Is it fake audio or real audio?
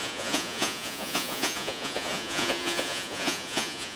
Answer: fake